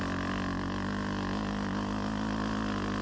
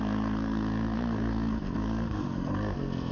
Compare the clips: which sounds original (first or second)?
first